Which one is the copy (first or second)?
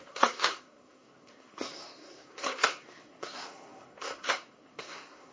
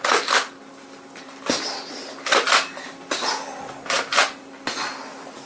first